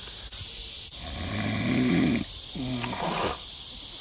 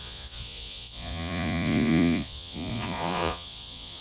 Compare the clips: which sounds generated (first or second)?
second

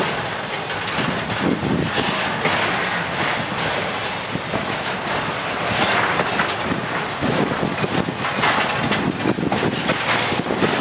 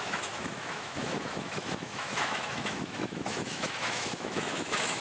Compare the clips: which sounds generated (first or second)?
second